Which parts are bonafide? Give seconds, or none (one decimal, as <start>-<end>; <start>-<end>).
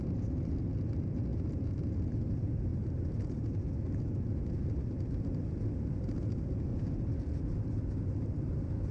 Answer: 2.7-4.5; 6.7-7.8